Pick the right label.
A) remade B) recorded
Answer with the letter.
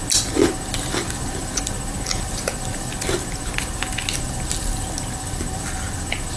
B